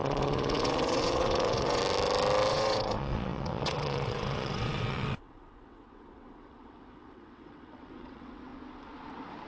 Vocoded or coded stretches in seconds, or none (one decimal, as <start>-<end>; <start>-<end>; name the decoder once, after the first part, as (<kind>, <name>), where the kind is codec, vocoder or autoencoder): 0.0-1.8 (vocoder, WaveNeXt); 2.5-8.5